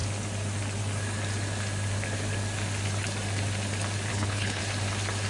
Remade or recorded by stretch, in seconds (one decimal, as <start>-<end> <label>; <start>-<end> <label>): 0.0-4.1 recorded; 4.1-4.6 remade; 4.6-5.3 recorded